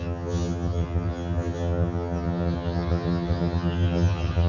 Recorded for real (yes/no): no